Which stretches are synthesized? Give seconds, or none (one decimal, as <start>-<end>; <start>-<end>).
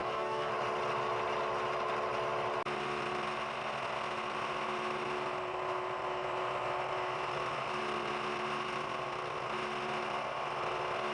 0.0-0.5